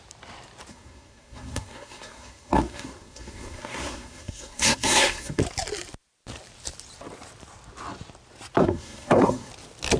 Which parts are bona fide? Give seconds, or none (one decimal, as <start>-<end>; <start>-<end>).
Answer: 0.0-0.7; 5.4-8.6; 9.5-10.0